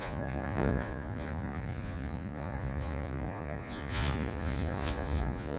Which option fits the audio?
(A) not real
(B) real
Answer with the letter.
A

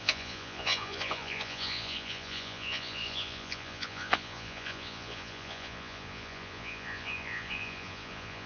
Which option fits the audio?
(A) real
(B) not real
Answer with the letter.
B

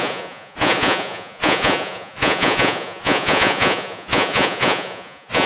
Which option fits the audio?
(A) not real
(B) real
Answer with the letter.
A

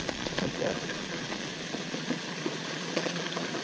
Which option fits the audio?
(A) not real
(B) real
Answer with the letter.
A